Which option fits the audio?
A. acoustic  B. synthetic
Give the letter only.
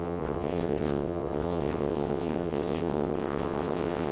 B